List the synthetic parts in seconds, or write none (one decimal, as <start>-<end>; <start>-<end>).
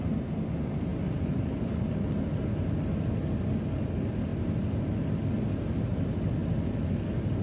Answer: none